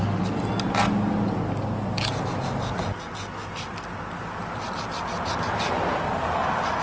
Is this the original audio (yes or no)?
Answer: yes